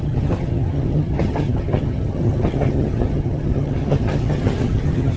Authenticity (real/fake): fake